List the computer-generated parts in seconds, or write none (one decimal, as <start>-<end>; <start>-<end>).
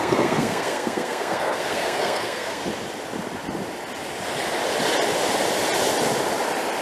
0.0-2.6